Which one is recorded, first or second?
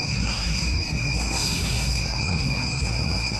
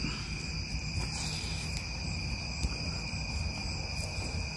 second